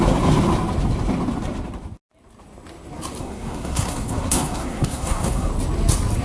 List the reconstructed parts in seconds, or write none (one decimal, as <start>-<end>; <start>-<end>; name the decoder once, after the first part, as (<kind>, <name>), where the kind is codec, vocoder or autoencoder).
3.2-5.5 (codec, SNAC)